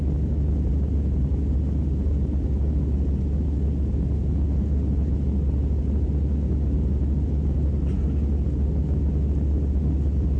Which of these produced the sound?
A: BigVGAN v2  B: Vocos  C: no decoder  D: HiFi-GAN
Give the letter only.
C